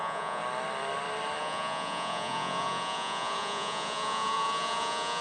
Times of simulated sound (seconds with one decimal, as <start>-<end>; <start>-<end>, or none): 0.0-0.4; 1.4-5.2